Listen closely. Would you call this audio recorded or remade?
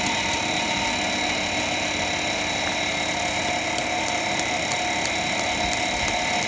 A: recorded